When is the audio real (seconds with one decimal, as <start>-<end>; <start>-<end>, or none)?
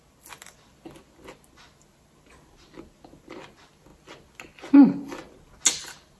0.0-6.2